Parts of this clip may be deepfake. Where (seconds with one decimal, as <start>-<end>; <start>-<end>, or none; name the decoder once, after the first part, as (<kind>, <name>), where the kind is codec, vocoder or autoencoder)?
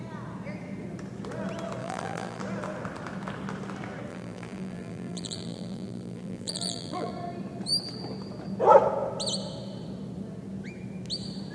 1.8-2.4 (vocoder, BigVGAN v2); 4.1-7.1